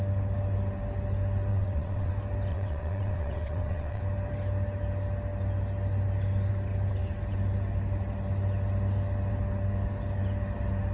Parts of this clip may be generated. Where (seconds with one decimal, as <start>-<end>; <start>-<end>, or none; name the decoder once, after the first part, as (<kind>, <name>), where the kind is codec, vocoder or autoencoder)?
1.5-2.1 (vocoder, WaveNeXt); 2.5-4.0